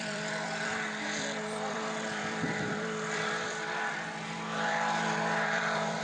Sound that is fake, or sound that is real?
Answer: fake